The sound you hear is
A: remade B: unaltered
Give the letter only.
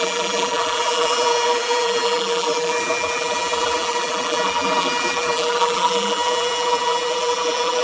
A